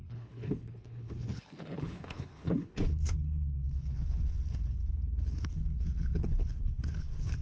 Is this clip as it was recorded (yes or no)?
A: no